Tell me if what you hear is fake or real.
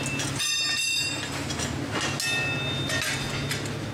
real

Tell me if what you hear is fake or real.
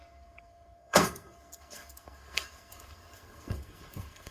fake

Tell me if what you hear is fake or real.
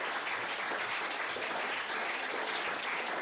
real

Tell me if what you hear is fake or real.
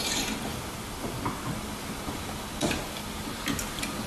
real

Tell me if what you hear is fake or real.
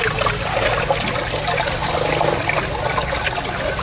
real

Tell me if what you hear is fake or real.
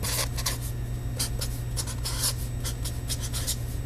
real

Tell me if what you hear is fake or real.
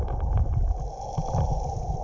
real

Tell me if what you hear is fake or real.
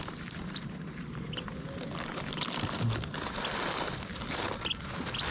real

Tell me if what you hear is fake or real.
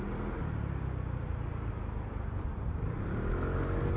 real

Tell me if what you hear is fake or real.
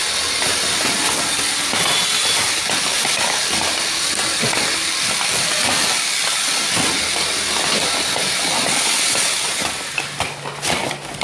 real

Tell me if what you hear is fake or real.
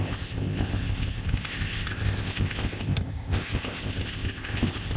fake